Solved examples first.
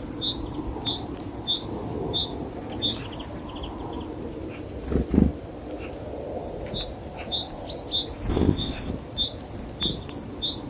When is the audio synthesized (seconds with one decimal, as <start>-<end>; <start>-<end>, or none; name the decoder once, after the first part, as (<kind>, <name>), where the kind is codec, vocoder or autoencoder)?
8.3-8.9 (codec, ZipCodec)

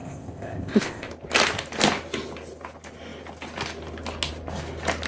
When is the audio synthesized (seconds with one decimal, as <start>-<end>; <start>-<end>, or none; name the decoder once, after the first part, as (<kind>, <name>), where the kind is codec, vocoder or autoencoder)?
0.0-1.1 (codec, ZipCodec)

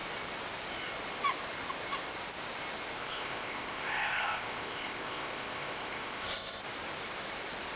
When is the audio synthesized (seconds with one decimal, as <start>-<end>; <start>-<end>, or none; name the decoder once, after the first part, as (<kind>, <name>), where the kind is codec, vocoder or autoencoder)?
3.0-6.6 (codec, ZipCodec)